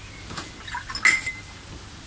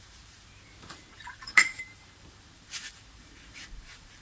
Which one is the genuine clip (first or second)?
first